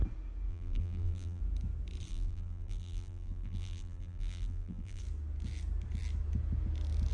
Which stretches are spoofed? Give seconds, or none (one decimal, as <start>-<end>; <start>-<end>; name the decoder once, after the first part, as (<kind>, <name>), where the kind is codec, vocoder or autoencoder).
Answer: 0.5-1.4 (vocoder, BigVGAN v2); 2.1-5.0